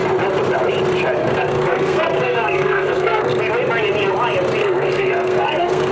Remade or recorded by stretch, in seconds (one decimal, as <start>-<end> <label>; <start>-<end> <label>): 0.0-1.2 recorded; 1.2-3.4 remade; 3.4-4.6 recorded; 4.6-5.9 remade